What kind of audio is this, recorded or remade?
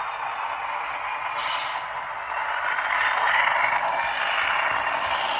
recorded